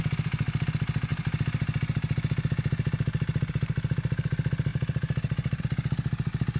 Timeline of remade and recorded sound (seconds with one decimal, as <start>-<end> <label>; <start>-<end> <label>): 0.0-4.7 recorded; 4.7-5.6 remade; 5.6-6.6 recorded